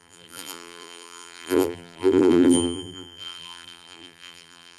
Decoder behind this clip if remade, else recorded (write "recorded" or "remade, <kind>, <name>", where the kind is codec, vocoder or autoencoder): remade, vocoder, BigVGAN v2